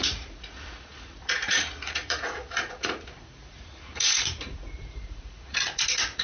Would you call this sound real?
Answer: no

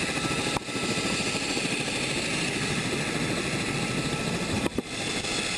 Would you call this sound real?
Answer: yes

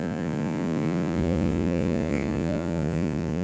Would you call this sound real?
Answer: no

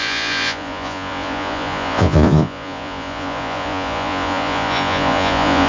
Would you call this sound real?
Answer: no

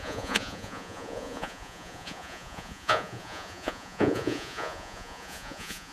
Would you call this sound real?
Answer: no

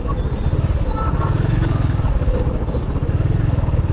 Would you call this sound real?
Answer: yes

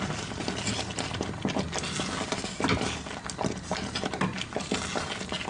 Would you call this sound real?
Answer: yes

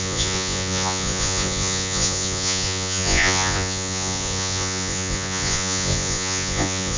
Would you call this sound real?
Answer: no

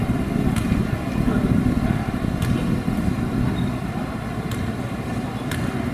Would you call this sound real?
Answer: yes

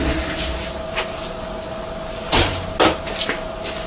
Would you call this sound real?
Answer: yes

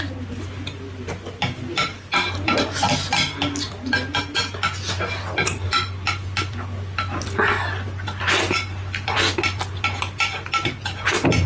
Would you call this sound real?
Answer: yes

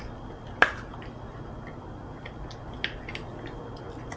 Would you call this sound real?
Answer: yes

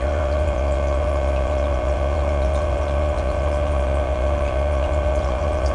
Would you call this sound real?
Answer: no